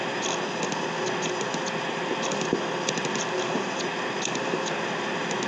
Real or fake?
real